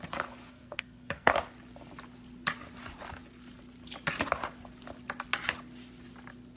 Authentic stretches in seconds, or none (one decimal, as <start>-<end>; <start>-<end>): 0.0-0.5; 1.3-6.6